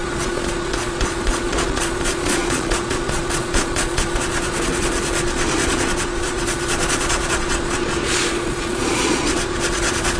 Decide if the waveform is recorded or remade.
remade